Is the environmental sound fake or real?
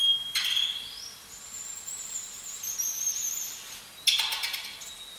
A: real